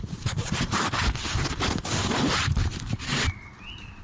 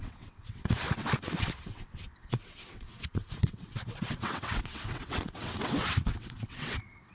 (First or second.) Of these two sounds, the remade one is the second